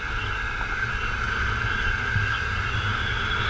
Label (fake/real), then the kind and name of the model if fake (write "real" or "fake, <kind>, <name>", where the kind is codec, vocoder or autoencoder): real